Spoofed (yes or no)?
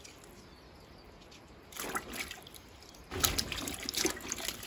no